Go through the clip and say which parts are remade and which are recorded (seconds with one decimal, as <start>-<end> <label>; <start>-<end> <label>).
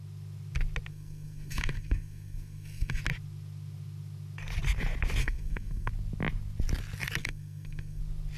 0.0-0.9 recorded; 0.9-3.0 remade; 3.0-5.2 recorded; 5.2-5.9 remade; 5.9-7.2 recorded; 7.2-8.0 remade; 8.0-8.4 recorded